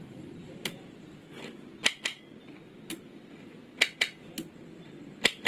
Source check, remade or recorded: recorded